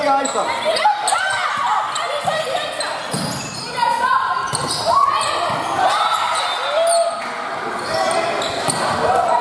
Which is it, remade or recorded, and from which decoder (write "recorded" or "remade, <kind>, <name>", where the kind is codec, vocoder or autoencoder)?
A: recorded